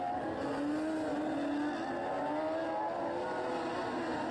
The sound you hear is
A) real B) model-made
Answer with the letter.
A